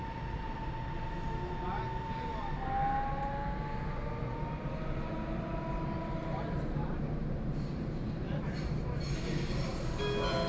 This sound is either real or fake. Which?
real